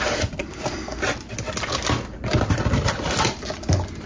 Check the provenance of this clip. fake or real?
real